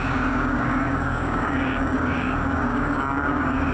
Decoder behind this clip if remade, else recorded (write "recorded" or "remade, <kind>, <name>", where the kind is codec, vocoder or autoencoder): remade, codec, DAC